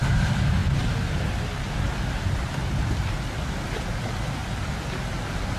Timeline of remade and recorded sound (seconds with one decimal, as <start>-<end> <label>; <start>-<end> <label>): 0.0-5.6 recorded

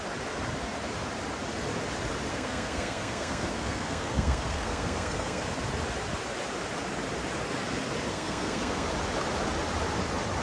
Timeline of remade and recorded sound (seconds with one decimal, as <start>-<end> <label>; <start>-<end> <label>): 0.0-2.3 recorded; 2.3-5.5 remade; 5.5-8.1 recorded; 8.1-8.9 remade; 8.9-10.4 recorded

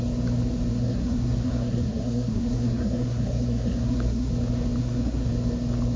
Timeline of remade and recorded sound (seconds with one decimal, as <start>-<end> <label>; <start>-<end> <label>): 0.0-0.7 recorded; 0.7-4.3 remade; 4.3-4.8 recorded; 4.8-5.3 remade; 5.3-6.0 recorded

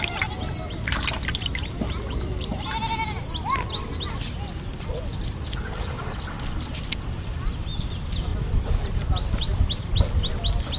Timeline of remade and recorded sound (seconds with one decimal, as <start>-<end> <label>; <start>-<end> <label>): 0.0-10.8 recorded

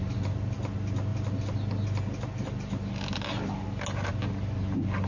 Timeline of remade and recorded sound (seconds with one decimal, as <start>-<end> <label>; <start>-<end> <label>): 0.0-5.1 recorded